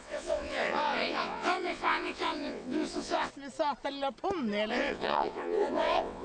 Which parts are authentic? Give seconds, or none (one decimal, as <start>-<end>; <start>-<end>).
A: 3.3-4.7